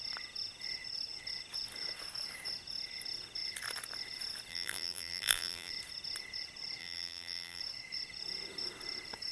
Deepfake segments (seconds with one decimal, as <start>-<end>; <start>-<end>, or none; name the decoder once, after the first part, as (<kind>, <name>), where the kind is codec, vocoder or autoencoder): 4.5-5.7 (vocoder, BigVGAN v2); 6.8-7.6